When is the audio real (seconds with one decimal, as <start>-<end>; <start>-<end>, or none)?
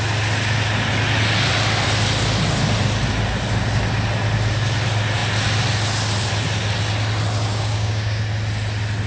0.0-7.5; 8.2-9.1